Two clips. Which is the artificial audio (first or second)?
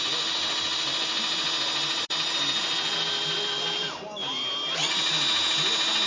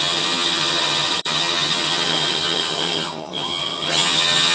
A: second